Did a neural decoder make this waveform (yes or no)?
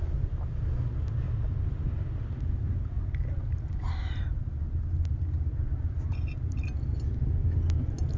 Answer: no